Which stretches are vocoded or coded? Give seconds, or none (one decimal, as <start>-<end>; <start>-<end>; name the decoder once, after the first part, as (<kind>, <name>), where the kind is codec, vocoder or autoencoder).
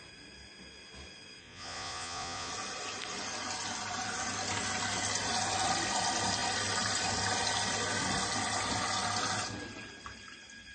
1.4-2.5 (vocoder, Vocos)